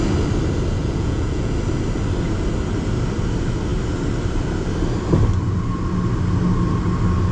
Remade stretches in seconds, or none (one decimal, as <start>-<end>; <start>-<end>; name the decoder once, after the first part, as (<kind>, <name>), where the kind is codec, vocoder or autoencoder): 0.8-1.5 (vocoder, Vocos)